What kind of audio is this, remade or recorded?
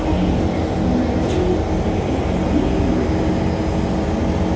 recorded